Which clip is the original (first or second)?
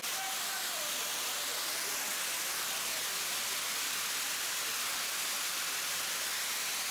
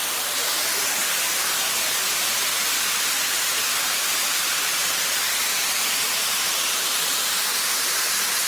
first